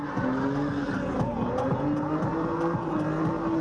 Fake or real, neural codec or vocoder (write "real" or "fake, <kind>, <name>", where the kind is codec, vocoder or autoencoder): real